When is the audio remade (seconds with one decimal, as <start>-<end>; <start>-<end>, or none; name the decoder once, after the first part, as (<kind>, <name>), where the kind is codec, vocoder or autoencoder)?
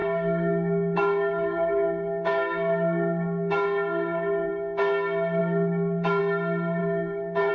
0.0-4.5 (codec, DAC); 5.4-6.2; 6.8-7.5